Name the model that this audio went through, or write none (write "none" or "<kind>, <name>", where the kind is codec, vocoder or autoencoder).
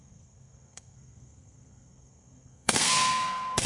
codec, SNAC